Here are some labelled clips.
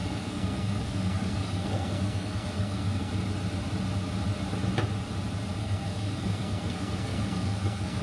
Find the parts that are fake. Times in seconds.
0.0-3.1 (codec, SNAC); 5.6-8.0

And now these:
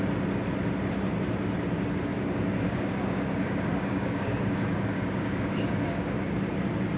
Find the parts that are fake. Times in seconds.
2.1-6.3 (codec, DAC)